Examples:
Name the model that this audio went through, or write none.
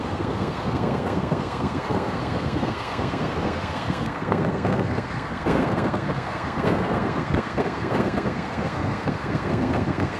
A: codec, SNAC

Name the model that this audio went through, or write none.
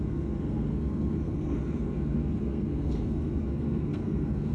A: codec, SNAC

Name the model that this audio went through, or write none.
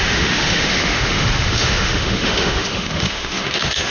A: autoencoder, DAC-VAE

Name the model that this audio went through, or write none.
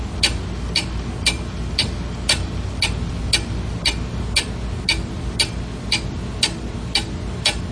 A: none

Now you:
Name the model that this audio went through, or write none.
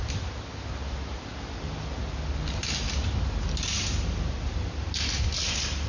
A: none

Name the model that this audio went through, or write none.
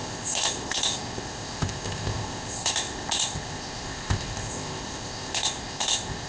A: codec, ZipCodec